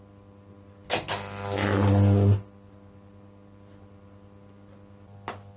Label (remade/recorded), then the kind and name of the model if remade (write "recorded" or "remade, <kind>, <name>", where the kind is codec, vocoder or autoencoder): recorded